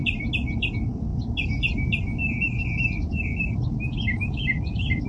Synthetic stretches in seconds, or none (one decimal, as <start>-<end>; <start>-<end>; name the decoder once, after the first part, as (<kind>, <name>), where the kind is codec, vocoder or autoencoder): none